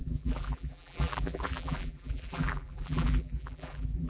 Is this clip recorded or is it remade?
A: remade